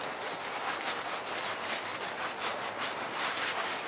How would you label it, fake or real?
real